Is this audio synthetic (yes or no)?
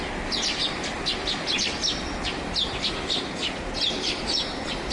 no